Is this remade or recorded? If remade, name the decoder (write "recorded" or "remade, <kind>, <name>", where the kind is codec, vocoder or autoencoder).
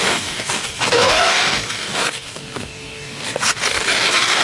remade, codec, DAC